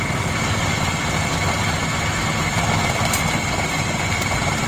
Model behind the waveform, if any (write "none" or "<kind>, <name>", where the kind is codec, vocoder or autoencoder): none